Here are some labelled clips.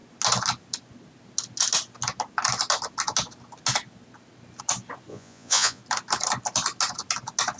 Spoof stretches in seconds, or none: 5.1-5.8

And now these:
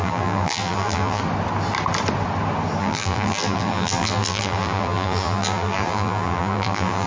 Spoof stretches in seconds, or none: 0.0-1.2; 2.8-7.1